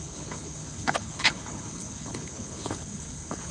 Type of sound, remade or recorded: remade